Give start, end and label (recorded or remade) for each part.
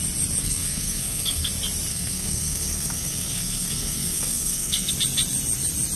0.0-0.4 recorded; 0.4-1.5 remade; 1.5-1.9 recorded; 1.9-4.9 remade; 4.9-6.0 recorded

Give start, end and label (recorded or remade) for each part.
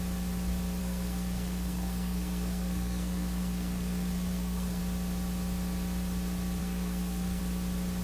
0.0-0.8 recorded; 0.8-4.8 remade; 4.8-6.6 recorded; 6.6-7.4 remade; 7.4-8.0 recorded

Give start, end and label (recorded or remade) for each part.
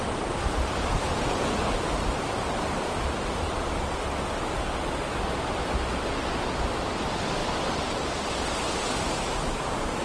0.0-10.0 recorded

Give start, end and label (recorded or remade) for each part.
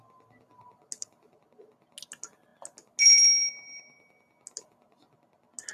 0.0-5.7 recorded